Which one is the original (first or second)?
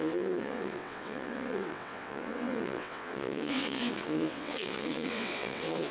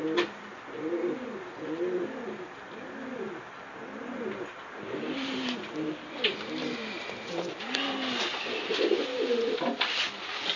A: second